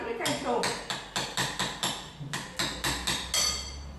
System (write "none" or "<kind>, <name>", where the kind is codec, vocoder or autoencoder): none